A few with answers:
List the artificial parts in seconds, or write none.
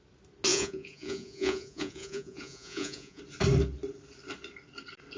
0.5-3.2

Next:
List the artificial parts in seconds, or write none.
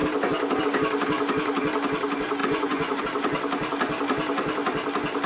2.4-3.0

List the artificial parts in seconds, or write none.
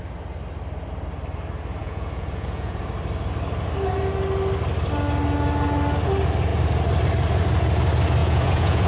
1.8-2.8; 8.2-8.9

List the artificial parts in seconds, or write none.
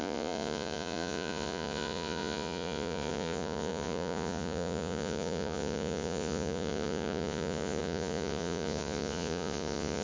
0.0-10.0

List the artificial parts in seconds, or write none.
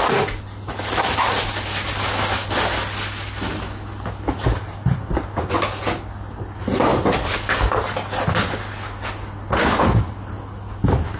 none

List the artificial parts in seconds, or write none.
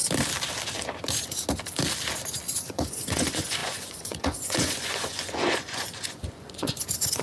2.6-7.2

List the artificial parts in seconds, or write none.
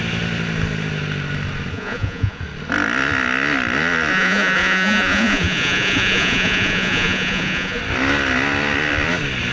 1.7-2.4; 4.1-7.8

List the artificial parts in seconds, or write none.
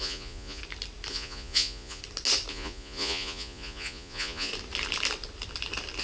0.0-0.6; 1.1-2.0; 2.5-4.5